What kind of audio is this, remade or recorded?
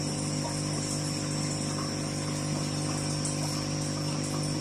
recorded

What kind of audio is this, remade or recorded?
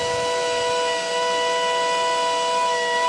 recorded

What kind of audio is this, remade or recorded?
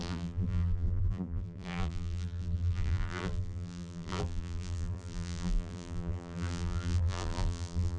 remade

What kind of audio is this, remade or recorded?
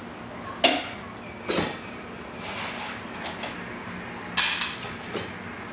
recorded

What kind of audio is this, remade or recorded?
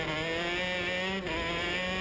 recorded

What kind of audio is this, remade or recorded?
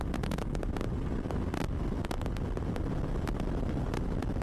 recorded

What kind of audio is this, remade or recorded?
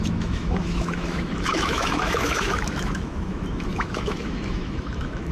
remade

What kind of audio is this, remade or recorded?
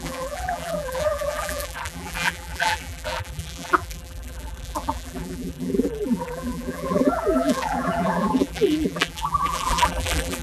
remade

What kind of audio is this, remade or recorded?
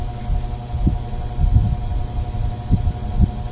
recorded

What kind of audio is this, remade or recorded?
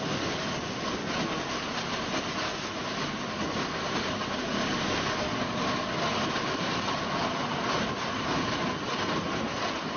recorded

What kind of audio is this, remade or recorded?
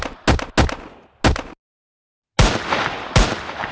recorded